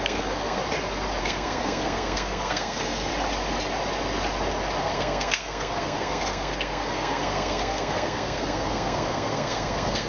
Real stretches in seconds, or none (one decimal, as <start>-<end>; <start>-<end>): 0.6-1.2; 3.1-4.8